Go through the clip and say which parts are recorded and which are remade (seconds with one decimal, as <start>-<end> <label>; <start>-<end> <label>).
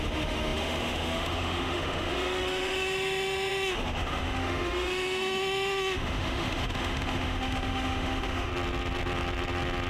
0.0-8.5 remade; 8.5-9.9 recorded